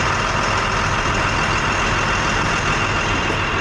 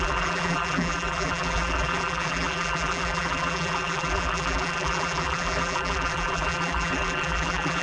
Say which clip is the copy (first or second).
second